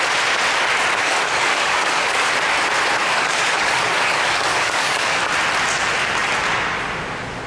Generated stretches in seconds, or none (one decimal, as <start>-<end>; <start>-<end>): 1.0-2.3; 3.0-5.2